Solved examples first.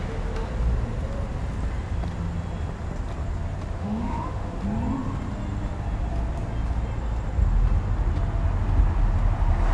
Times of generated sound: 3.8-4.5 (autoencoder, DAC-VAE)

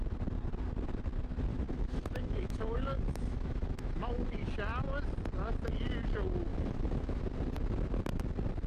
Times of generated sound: 1.5-4.5 (autoencoder, DAC-VAE); 6.5-7.2

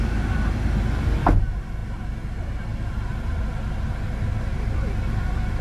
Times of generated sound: none

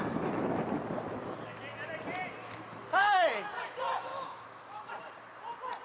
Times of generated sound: 2.4-3.0 (autoencoder, DAC-VAE); 4.1-4.9

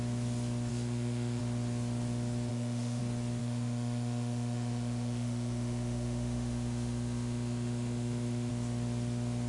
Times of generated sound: 0.7-1.4 (autoencoder, DAC-VAE); 2.5-3.0; 3.4-8.5

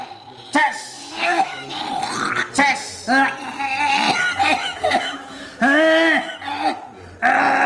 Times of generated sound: 0.6-1.8 (autoencoder, DAC-VAE); 4.6-6.3